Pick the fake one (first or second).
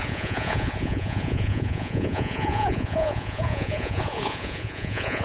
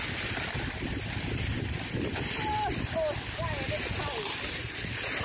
first